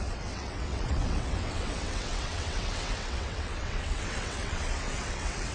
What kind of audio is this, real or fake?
fake